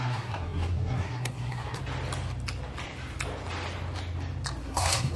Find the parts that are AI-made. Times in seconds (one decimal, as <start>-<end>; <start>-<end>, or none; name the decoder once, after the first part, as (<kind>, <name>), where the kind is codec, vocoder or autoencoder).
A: 0.0-1.8 (codec, SNAC); 4.6-5.2